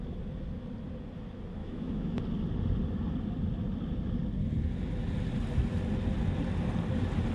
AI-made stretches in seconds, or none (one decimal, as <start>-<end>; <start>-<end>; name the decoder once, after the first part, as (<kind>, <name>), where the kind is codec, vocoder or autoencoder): 1.6-2.2 (autoencoder, DAC-VAE)